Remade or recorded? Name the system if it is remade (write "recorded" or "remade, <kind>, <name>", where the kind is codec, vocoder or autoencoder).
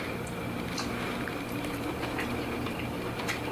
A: remade, vocoder, BigVGAN v2